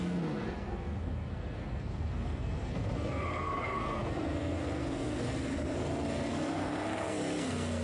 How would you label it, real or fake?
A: fake